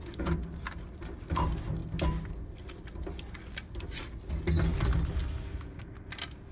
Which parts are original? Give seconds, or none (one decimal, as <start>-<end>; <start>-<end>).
0.0-6.5